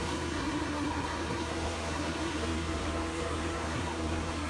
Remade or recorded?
remade